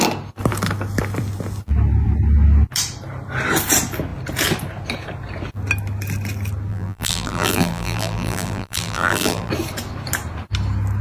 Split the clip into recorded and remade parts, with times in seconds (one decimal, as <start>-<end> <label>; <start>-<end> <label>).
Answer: 0.0-6.7 recorded; 6.7-9.5 remade; 9.5-11.0 recorded